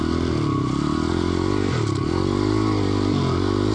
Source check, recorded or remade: recorded